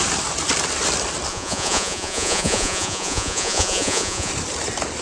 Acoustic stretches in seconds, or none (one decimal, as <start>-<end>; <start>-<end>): 0.0-1.3; 4.3-5.0

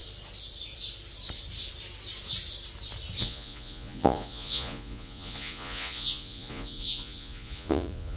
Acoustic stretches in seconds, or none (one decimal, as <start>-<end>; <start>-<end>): 0.0-3.2